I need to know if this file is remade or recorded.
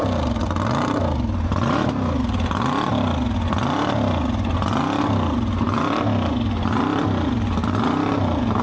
recorded